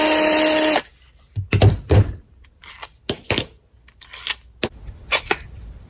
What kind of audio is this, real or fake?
real